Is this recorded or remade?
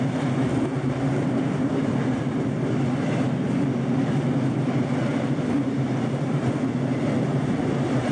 recorded